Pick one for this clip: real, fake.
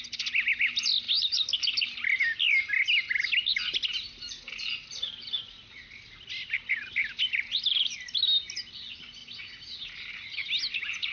real